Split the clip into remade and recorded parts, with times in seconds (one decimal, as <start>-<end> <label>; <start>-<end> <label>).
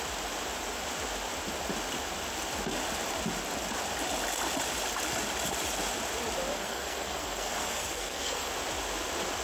0.0-6.5 recorded; 6.5-8.5 remade; 8.5-9.4 recorded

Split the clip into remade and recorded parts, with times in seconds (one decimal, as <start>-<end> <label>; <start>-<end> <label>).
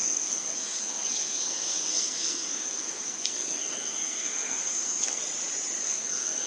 0.0-5.2 remade; 5.2-5.8 recorded; 5.8-6.5 remade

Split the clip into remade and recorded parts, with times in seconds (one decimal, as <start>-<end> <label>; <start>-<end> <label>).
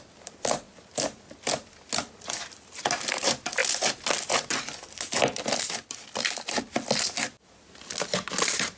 0.0-8.8 recorded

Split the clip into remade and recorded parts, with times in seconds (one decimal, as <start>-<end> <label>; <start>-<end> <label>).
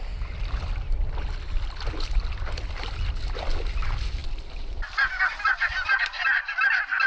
0.0-7.1 recorded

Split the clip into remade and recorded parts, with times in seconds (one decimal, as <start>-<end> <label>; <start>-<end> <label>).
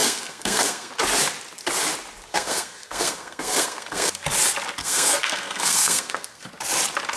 0.0-0.9 remade; 0.9-2.3 recorded; 2.3-4.1 remade; 4.1-4.8 recorded; 4.8-6.5 remade; 6.5-7.2 recorded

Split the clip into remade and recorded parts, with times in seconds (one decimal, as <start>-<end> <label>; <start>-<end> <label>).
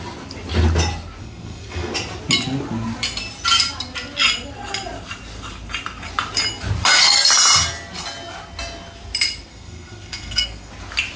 0.0-1.2 recorded; 1.2-1.9 remade; 1.9-9.5 recorded; 9.5-10.7 remade; 10.7-11.2 recorded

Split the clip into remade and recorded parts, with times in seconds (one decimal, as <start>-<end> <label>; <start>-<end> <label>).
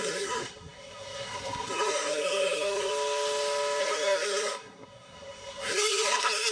0.0-2.9 remade; 2.9-3.8 recorded; 3.8-6.5 remade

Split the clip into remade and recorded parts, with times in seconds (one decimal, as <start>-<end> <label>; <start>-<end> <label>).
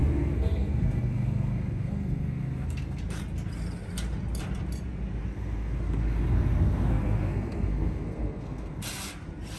0.0-3.0 remade; 3.0-5.3 recorded; 5.3-8.8 remade; 8.8-9.6 recorded